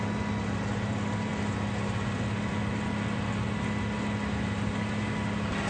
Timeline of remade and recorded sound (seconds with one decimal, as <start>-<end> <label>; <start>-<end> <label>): 0.0-5.7 recorded